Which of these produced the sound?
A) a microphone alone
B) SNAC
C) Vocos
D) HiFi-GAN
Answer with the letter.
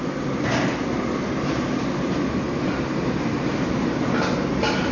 A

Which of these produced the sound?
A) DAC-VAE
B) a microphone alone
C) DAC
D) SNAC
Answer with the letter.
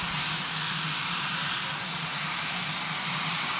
B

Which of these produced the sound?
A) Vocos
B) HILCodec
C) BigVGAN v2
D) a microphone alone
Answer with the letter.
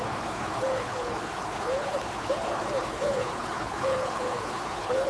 B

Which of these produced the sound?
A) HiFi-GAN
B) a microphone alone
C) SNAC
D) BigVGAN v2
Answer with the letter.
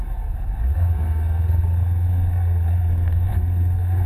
C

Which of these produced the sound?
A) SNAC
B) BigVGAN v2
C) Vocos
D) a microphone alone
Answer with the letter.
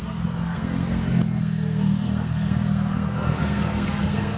A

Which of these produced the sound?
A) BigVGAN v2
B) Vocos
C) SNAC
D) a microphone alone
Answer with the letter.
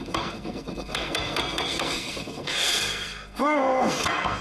C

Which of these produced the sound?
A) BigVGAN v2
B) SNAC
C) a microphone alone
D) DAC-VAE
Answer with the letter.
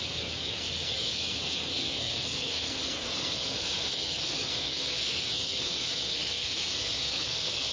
B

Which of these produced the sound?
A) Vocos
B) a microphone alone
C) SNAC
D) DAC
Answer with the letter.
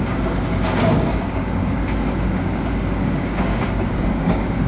D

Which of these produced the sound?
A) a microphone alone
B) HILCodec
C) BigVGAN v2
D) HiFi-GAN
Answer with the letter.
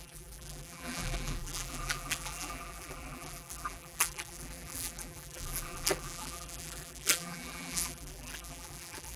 C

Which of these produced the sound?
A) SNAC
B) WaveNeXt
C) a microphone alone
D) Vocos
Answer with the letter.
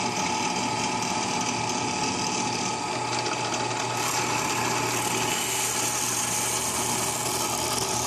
C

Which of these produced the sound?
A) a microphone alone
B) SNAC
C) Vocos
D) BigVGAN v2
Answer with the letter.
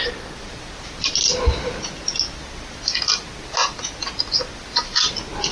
A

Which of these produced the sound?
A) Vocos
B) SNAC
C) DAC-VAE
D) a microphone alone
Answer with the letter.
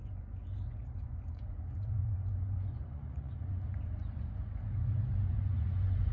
A